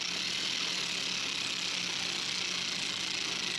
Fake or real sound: real